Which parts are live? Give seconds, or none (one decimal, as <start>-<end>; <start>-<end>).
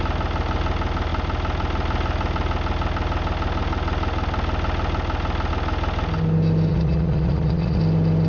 0.0-6.7; 7.8-8.3